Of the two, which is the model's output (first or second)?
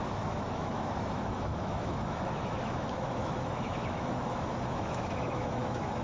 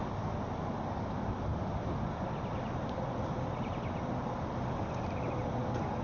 first